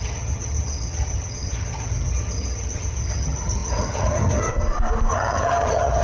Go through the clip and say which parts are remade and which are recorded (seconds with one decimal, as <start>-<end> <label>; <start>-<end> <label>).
0.0-4.5 remade; 4.5-5.1 recorded; 5.1-6.0 remade